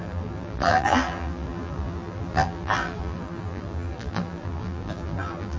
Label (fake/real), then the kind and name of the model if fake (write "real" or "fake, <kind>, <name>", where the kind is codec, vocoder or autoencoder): fake, vocoder, BigVGAN v2